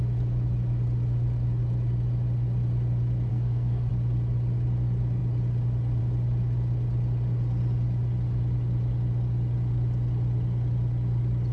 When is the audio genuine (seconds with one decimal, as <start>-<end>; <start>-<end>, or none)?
0.0-3.3; 3.9-11.5